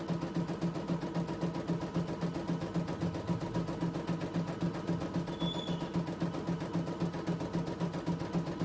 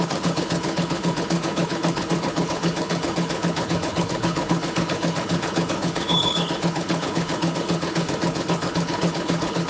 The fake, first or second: second